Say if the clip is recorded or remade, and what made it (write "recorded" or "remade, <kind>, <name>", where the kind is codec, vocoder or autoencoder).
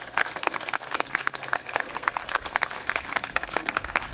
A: remade, codec, SNAC